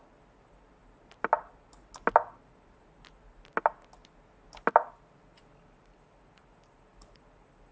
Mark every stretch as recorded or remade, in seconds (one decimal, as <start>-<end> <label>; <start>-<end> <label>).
0.0-0.8 remade; 0.8-5.4 recorded; 5.4-7.7 remade